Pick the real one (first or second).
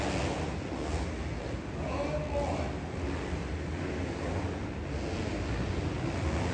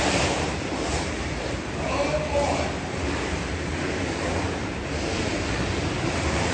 first